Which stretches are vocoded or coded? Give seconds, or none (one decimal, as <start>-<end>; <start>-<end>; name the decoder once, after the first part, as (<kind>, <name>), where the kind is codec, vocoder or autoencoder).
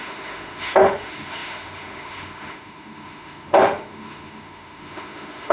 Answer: 0.0-5.5 (autoencoder, DAC-VAE)